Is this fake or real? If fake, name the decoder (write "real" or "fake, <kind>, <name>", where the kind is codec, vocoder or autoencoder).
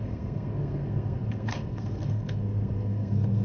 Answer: fake, codec, SNAC